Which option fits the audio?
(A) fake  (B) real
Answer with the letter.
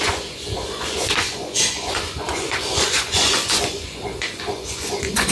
A